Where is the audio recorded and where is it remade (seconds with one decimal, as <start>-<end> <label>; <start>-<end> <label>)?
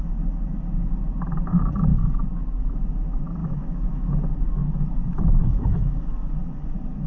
0.0-3.4 recorded; 3.4-4.1 remade; 4.1-4.6 recorded; 4.6-6.3 remade; 6.3-7.1 recorded